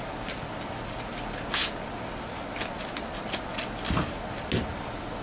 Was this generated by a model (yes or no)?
no